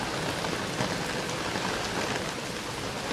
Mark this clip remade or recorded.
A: recorded